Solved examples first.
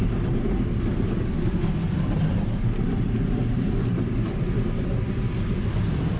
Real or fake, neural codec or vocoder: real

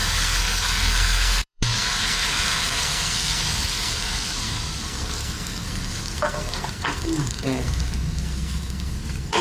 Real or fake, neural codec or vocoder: fake, codec, SNAC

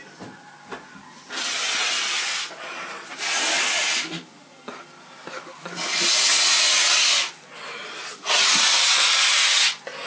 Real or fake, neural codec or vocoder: real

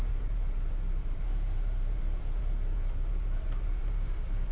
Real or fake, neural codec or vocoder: fake, vocoder, BigVGAN v2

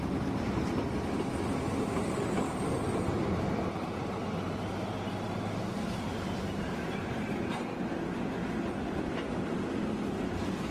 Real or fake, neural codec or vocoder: real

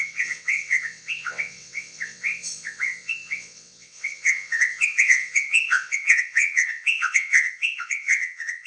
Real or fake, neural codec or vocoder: fake, vocoder, WaveNeXt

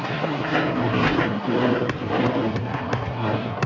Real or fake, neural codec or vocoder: fake, codec, SNAC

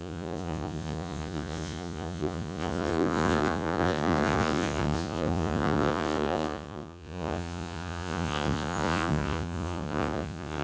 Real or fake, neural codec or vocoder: fake, vocoder, Vocos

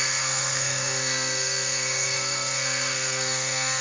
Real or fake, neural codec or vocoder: fake, codec, SNAC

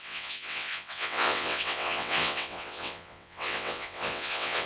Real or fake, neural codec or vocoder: fake, vocoder, WaveNeXt